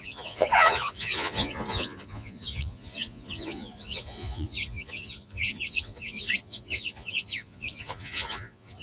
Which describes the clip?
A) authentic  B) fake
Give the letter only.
B